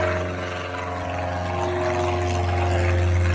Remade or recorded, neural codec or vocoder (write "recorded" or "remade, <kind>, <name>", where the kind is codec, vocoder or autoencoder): recorded